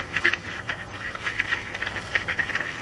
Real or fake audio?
fake